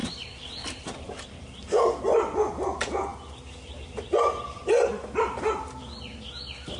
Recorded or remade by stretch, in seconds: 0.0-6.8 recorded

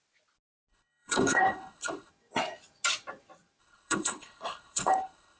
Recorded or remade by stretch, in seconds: 0.0-0.7 recorded; 0.7-2.1 remade; 2.1-3.6 recorded; 3.6-5.4 remade

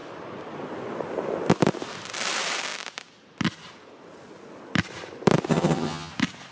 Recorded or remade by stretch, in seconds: 0.0-5.5 recorded; 5.5-6.1 remade; 6.1-6.5 recorded

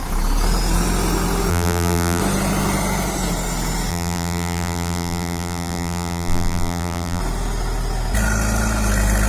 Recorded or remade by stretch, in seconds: 0.0-1.5 recorded; 1.5-2.2 remade; 2.2-3.9 recorded; 3.9-7.2 remade; 7.2-9.3 recorded